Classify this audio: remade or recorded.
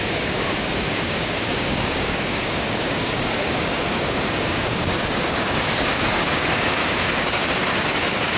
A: remade